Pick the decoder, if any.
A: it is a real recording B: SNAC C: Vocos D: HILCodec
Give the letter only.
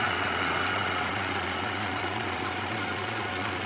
C